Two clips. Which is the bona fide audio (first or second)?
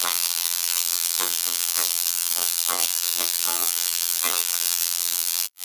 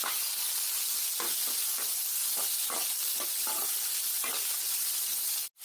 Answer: second